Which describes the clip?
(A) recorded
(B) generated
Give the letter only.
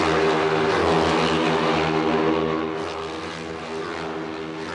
A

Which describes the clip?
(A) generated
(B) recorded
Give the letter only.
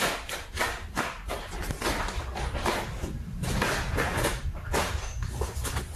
A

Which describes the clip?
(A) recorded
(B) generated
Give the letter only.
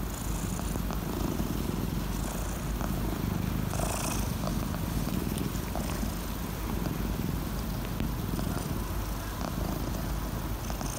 A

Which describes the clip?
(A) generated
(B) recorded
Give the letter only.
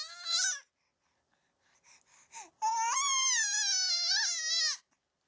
A